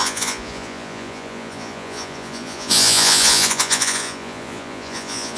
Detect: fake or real fake